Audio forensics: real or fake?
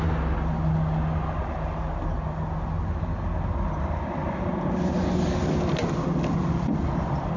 real